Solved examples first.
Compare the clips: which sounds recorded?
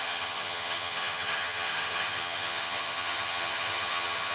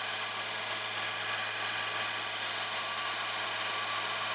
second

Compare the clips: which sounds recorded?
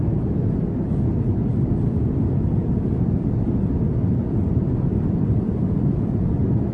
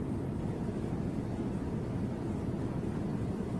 second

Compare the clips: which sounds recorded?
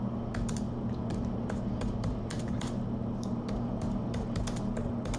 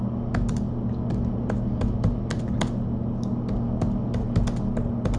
second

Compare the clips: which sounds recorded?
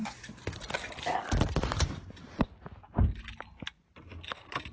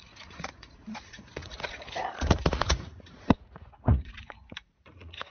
first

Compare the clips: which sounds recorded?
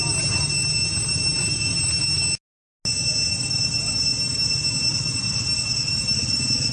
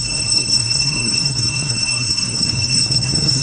first